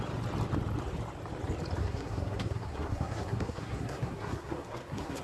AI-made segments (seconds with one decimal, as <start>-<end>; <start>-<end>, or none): 1.8-5.2